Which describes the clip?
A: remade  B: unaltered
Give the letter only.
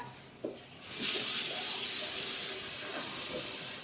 B